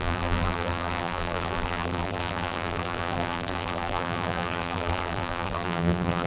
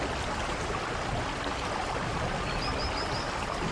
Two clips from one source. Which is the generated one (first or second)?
first